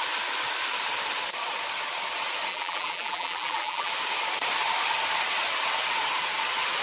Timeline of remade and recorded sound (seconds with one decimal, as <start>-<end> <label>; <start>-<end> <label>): 0.0-2.5 recorded; 2.5-3.9 remade; 3.9-6.8 recorded